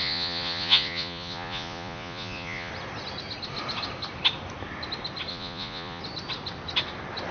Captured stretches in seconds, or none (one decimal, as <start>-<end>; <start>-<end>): 2.7-5.3; 6.0-7.3